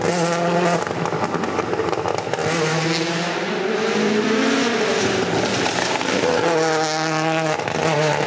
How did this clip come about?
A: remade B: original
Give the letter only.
B